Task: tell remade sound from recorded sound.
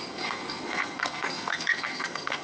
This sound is remade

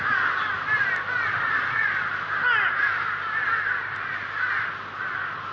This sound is recorded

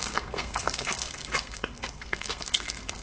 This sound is remade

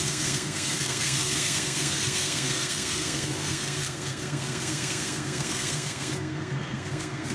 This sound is remade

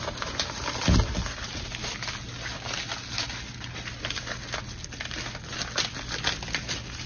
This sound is recorded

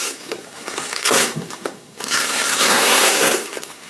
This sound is remade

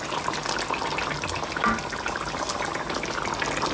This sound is recorded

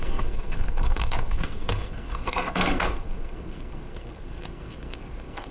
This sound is remade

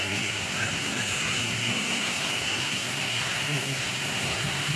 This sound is remade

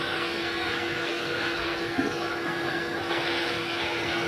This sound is remade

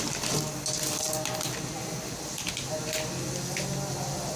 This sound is recorded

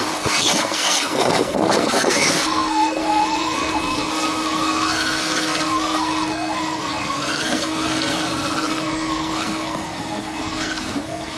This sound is remade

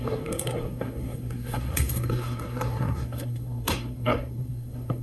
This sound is remade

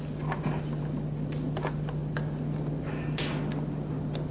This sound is recorded